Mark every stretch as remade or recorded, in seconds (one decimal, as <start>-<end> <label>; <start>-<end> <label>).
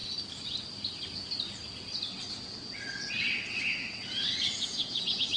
0.0-2.1 recorded; 2.1-5.4 remade